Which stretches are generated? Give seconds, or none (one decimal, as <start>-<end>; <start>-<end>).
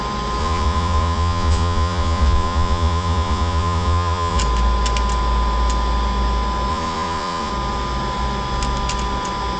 0.4-4.4; 6.7-7.5